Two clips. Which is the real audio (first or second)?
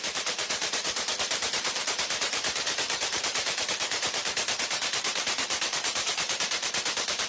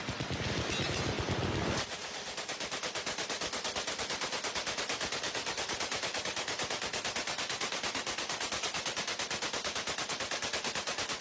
second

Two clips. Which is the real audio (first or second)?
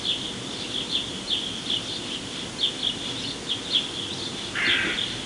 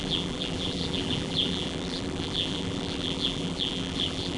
first